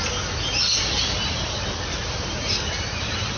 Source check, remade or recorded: recorded